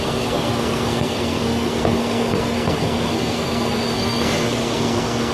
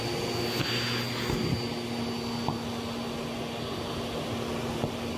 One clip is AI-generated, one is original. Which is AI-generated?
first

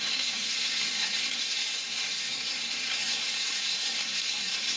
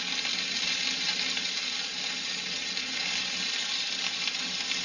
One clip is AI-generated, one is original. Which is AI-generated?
first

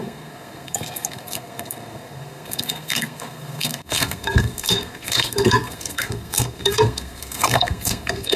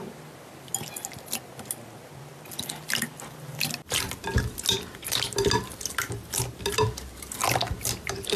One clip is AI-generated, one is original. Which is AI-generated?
first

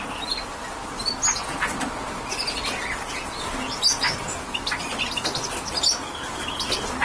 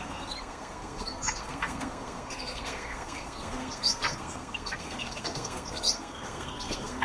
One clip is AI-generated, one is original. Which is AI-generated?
second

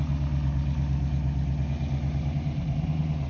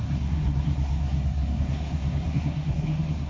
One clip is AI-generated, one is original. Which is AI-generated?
second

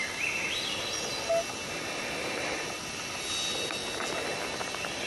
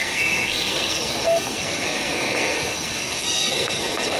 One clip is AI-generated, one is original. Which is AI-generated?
second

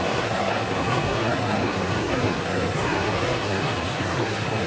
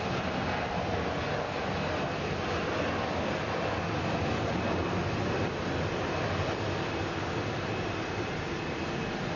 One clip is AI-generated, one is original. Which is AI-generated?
first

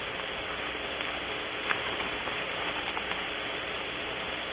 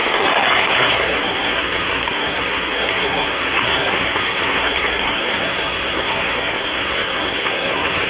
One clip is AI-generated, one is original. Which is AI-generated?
second